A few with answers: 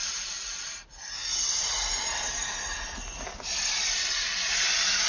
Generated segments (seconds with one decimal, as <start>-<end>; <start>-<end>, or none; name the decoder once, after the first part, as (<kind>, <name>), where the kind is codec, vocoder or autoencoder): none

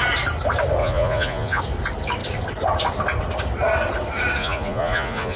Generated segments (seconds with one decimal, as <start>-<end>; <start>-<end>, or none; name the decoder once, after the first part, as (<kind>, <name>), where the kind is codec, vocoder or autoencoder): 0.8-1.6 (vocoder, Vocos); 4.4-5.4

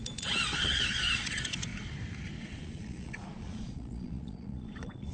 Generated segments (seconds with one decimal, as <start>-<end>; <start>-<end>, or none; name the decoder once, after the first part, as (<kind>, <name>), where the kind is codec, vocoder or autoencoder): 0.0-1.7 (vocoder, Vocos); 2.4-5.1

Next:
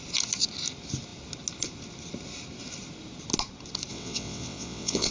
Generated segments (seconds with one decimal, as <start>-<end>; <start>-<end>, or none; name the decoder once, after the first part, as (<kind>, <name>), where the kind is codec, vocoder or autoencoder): 3.9-5.1 (vocoder, WaveNeXt)

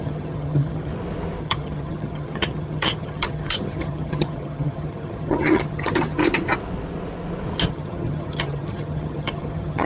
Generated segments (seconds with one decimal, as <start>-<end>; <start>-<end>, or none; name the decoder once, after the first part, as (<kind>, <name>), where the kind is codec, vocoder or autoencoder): 0.0-0.9 (vocoder, HiFi-GAN); 1.4-6.2; 7.7-9.9

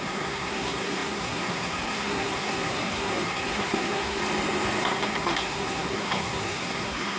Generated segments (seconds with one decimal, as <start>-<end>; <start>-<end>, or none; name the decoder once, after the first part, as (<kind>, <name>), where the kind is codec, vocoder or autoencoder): 0.0-4.2 (codec, SNAC); 4.8-7.2